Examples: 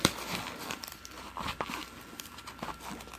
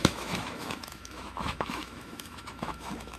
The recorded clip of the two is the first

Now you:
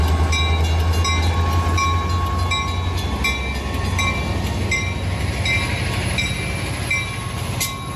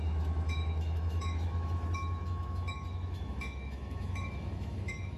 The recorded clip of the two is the first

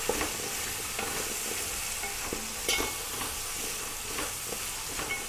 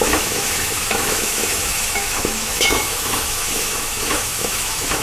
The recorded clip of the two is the first